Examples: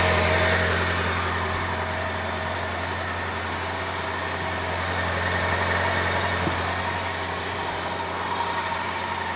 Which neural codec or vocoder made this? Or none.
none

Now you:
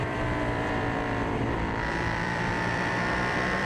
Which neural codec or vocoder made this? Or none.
vocoder, BigVGAN v2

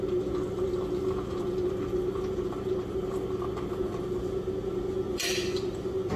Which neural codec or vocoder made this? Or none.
none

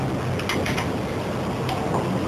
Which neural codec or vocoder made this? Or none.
none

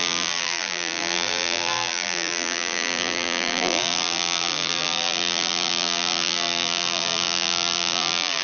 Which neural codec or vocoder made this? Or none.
vocoder, BigVGAN v2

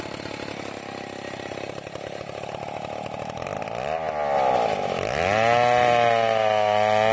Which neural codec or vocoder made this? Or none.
none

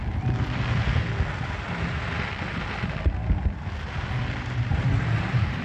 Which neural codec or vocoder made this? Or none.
vocoder, BigVGAN v2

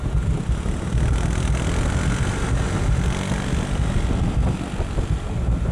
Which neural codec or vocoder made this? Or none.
none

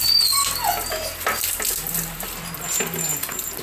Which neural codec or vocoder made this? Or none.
none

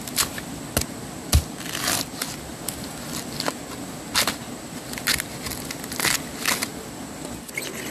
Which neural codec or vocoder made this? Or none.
none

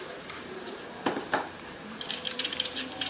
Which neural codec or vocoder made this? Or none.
vocoder, BigVGAN v2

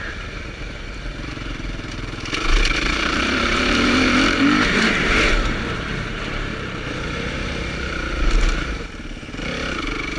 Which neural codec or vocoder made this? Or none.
vocoder, BigVGAN v2